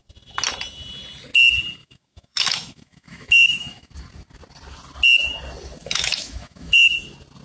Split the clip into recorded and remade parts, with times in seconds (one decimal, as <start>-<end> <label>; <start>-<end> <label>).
0.0-1.8 recorded; 1.8-3.9 remade; 3.9-5.8 recorded; 5.8-6.9 remade; 6.9-7.4 recorded